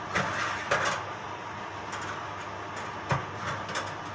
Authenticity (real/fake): real